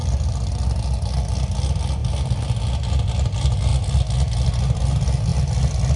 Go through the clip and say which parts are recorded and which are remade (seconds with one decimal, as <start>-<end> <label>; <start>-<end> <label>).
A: 0.0-0.7 remade; 0.7-2.0 recorded; 2.0-2.7 remade; 2.7-3.7 recorded; 3.7-4.5 remade; 4.5-5.3 recorded; 5.3-6.0 remade